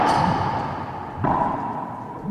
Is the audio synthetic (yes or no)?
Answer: no